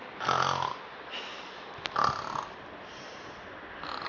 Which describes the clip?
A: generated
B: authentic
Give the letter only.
B